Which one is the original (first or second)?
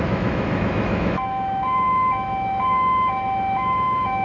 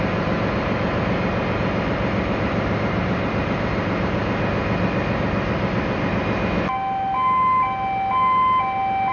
second